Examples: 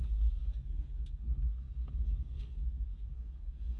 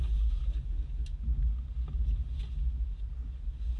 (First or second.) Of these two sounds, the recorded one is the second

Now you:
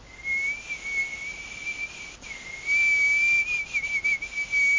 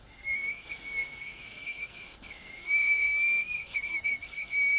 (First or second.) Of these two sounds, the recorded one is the first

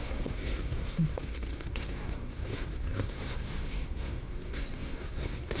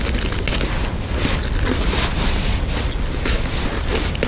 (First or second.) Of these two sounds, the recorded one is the second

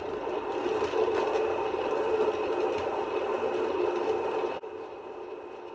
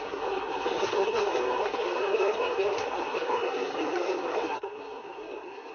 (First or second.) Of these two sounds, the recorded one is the first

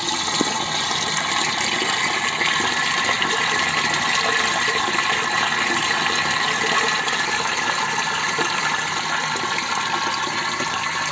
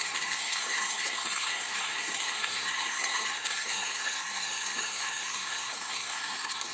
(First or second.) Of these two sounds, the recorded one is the first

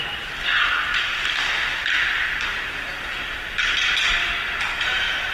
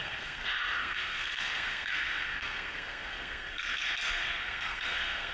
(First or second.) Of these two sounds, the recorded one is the first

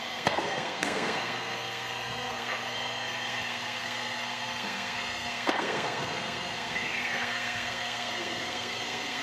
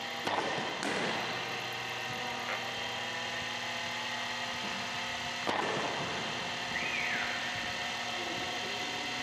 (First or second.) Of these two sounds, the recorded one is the second